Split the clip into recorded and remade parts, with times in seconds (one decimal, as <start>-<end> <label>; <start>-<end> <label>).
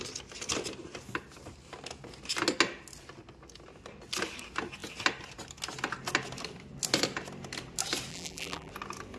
0.0-8.1 recorded; 8.1-8.7 remade; 8.7-9.2 recorded